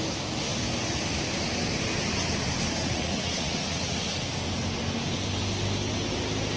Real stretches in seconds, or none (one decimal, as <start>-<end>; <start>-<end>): 0.0-2.8; 4.1-6.6